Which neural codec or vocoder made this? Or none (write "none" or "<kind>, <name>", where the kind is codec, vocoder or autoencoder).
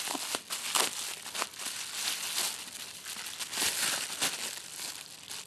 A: none